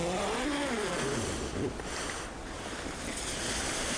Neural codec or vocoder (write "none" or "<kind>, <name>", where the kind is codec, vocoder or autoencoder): none